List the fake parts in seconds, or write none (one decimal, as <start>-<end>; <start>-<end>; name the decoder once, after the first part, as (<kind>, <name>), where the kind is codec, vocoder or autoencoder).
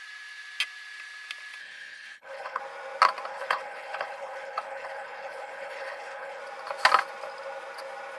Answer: 1.6-2.6 (codec, HILCodec); 3.3-6.4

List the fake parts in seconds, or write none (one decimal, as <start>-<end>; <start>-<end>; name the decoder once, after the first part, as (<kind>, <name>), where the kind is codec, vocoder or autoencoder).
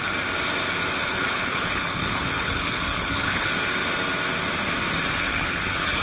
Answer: 1.0-3.5 (codec, HILCodec); 5.3-6.0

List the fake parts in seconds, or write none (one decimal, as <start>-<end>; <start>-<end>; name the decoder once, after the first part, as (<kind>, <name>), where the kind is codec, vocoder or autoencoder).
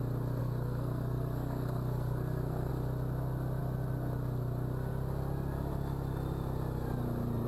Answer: 0.4-2.7 (codec, SNAC)